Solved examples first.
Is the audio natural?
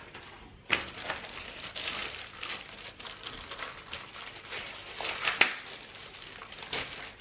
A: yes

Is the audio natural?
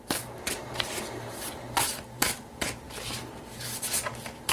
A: no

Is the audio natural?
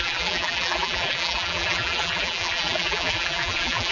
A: no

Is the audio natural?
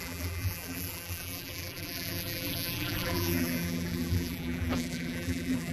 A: no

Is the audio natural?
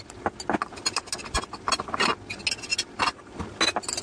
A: yes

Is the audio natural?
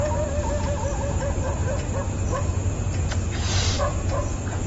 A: yes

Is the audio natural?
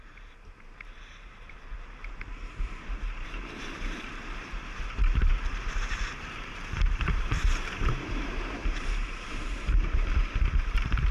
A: no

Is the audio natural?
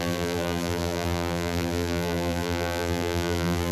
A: no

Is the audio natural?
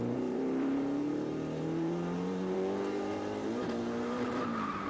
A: no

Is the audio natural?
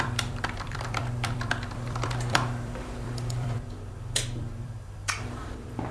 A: no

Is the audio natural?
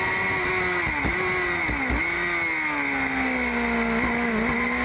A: yes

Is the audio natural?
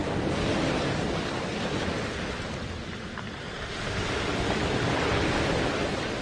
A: yes